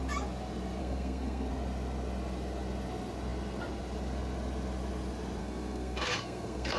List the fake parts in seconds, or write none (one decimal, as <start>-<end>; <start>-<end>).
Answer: 0.8-1.5; 5.4-6.8

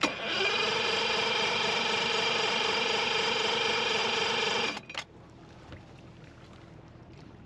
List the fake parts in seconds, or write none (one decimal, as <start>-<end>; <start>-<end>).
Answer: 0.0-4.0; 7.0-7.5

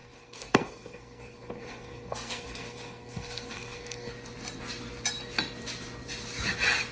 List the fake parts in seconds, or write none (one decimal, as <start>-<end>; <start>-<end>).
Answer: 0.0-4.1

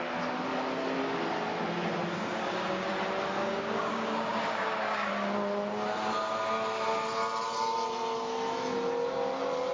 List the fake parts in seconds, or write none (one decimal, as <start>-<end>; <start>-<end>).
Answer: 2.1-2.9; 3.5-5.1

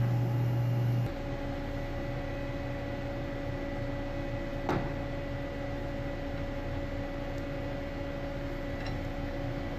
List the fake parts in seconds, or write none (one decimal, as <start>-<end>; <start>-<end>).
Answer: none